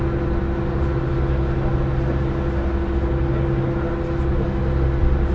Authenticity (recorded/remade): recorded